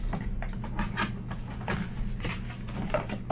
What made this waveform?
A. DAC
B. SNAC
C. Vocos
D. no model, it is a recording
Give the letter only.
D